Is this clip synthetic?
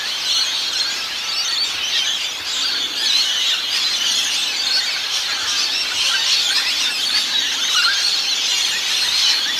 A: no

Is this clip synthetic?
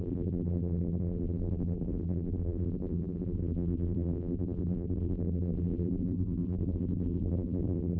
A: yes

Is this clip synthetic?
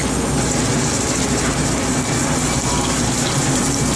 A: no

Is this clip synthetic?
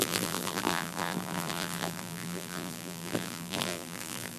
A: yes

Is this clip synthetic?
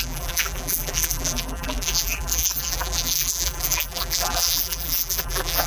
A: yes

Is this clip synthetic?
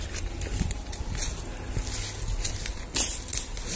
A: no